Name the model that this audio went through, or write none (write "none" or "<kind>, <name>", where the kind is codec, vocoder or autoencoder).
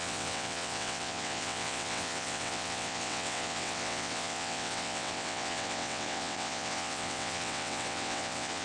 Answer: vocoder, WaveNeXt